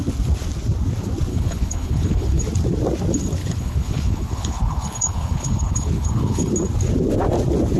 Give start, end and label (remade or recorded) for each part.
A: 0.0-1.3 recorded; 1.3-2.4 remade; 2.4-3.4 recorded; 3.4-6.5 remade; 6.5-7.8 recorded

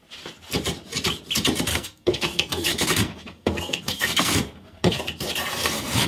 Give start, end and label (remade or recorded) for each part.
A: 0.0-1.7 recorded; 1.7-5.0 remade; 5.0-5.5 recorded; 5.5-6.1 remade

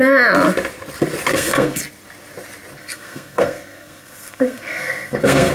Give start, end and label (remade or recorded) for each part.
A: 0.0-1.3 recorded; 1.3-1.8 remade; 1.8-2.8 recorded; 2.8-5.5 remade

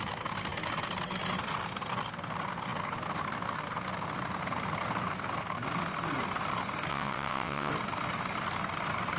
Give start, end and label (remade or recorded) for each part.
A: 0.0-6.9 recorded; 6.9-7.7 remade; 7.7-9.2 recorded